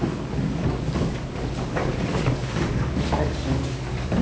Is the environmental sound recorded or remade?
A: remade